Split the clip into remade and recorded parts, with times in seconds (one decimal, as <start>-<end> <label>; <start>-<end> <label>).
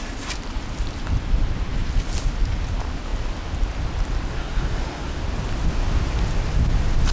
0.0-4.3 recorded; 4.3-5.2 remade; 5.2-7.1 recorded